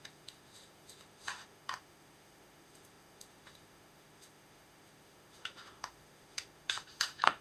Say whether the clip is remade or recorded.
remade